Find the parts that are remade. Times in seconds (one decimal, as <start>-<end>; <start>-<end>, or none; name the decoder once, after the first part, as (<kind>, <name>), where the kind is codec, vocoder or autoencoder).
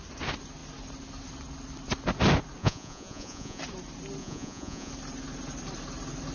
2.6-3.6 (vocoder, Vocos); 4.2-4.9